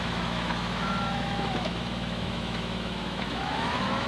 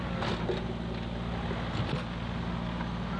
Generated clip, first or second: first